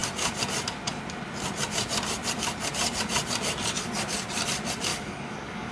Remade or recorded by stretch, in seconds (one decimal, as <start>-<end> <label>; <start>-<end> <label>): 0.0-4.9 recorded; 4.9-5.7 remade